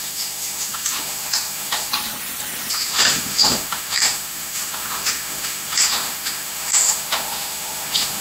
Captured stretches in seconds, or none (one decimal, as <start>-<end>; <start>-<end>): 1.9-2.7